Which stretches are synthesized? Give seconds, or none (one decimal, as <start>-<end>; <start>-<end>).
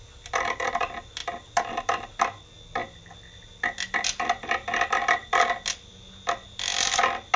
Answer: none